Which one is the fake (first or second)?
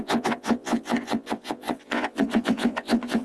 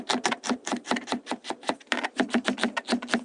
first